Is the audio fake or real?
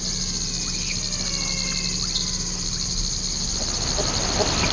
real